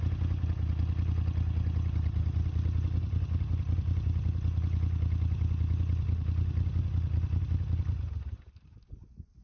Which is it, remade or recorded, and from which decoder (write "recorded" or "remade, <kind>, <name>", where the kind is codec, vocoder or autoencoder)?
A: recorded